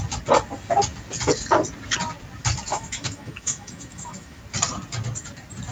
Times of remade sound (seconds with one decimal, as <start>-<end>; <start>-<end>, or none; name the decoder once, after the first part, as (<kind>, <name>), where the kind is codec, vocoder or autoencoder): 2.7-4.4 (autoencoder, DAC-VAE)